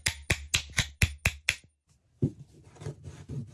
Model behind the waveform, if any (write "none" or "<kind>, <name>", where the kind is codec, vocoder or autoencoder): none